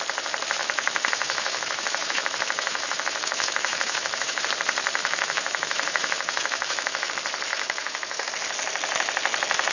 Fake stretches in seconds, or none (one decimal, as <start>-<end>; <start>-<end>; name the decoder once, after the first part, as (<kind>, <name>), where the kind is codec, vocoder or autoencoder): 0.6-4.4 (autoencoder, DAC-VAE); 5.0-7.1; 7.5-8.3

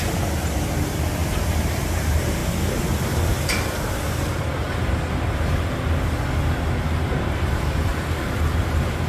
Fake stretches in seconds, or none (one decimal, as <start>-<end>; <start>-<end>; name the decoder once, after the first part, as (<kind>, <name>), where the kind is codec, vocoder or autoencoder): 0.0-2.4 (vocoder, BigVGAN v2); 6.8-7.9; 8.5-9.1

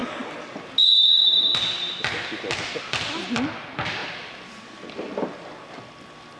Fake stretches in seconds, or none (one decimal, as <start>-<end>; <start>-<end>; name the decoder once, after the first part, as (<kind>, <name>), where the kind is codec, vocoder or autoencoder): 4.0-6.0 (vocoder, BigVGAN v2)

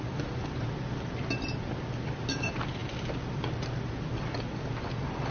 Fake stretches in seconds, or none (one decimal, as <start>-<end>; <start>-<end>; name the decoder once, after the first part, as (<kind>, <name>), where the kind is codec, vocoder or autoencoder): none